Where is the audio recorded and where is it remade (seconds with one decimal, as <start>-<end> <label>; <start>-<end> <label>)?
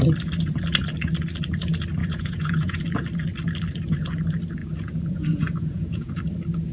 0.0-2.0 recorded; 2.0-2.8 remade; 2.8-4.6 recorded; 4.6-6.1 remade; 6.1-6.7 recorded